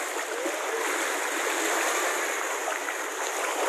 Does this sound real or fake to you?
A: real